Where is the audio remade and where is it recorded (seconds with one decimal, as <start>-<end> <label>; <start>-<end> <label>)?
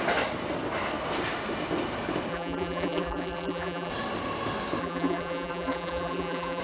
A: 0.0-2.3 recorded; 2.3-3.9 remade; 3.9-4.8 recorded; 4.8-6.6 remade